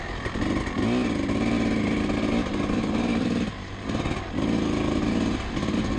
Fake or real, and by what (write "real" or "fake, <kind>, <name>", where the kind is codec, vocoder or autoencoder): real